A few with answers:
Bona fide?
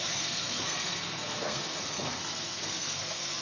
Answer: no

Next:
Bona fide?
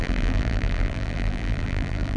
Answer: no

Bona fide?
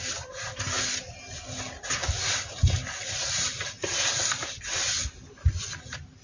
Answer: yes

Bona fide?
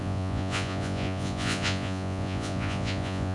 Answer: no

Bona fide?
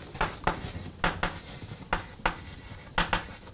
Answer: yes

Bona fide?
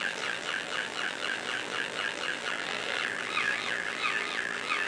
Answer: no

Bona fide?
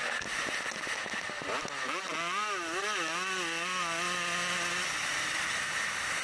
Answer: yes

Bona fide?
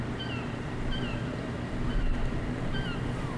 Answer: yes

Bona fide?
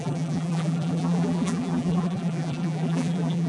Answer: no